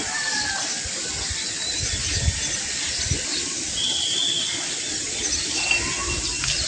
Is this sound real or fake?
real